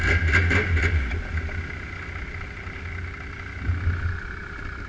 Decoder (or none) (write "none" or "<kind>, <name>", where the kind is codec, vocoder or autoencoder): none